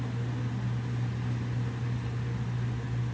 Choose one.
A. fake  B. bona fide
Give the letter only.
B